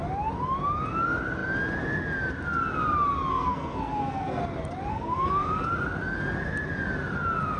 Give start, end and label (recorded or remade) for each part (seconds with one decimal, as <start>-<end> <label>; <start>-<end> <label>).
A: 0.0-3.3 recorded; 3.3-4.4 remade; 4.4-4.9 recorded; 4.9-5.6 remade; 5.6-7.6 recorded